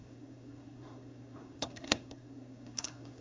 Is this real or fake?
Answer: fake